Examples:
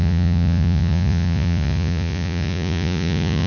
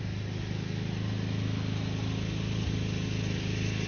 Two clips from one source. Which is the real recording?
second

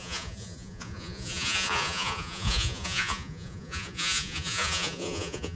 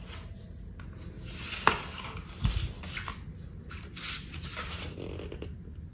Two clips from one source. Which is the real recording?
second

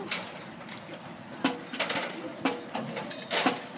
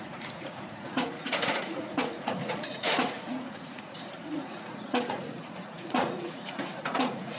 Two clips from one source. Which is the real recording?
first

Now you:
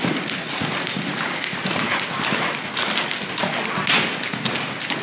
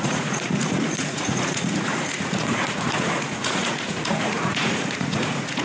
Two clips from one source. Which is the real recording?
first